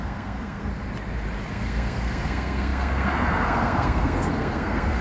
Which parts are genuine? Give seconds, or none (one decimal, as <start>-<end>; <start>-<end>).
0.7-1.5